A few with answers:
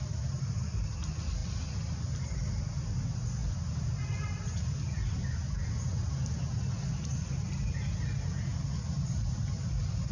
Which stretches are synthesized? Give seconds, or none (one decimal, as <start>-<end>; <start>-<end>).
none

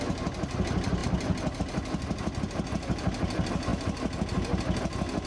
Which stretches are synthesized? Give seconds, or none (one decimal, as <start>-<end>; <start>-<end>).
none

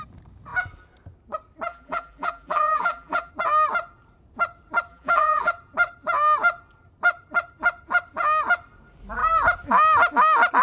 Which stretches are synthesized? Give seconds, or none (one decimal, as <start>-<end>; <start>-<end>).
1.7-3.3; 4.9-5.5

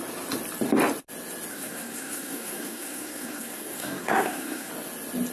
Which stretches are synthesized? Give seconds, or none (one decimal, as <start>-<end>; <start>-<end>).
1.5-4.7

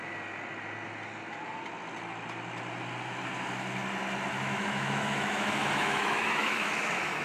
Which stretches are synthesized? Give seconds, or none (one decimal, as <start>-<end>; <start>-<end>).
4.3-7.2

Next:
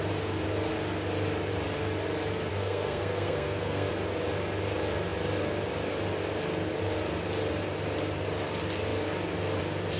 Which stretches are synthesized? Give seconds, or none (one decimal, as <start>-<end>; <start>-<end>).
2.5-3.9